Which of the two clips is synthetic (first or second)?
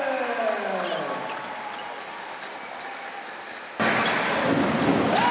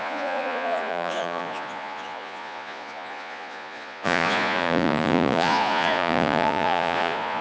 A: second